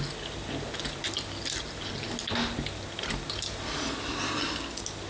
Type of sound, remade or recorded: recorded